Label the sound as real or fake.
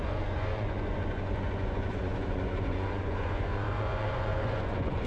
fake